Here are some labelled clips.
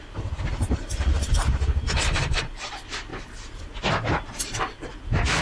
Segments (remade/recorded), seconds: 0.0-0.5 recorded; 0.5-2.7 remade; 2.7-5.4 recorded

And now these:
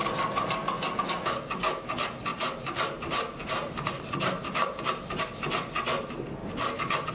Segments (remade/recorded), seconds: 0.0-2.3 recorded; 2.3-4.8 remade; 4.8-6.4 recorded; 6.4-7.1 remade

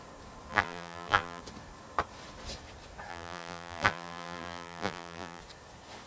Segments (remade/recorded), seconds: 0.0-0.5 recorded; 0.5-1.4 remade; 1.4-3.1 recorded; 3.1-5.4 remade; 5.4-6.1 recorded